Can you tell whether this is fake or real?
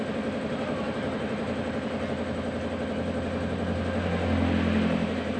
real